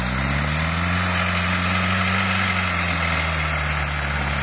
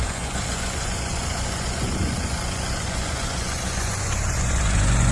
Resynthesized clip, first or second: second